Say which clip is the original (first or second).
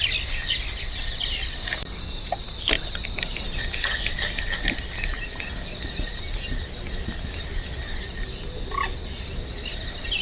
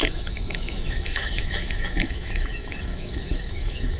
first